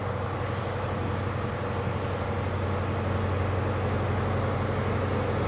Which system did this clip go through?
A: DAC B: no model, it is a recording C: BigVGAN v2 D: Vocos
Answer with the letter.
B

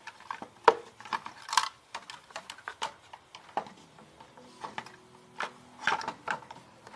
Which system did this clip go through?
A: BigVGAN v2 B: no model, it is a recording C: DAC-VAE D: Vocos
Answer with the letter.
B